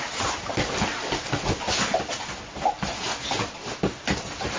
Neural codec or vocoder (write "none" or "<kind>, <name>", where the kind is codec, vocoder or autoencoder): none